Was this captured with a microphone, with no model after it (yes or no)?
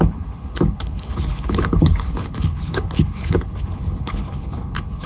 no